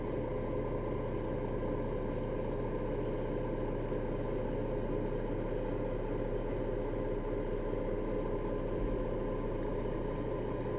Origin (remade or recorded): recorded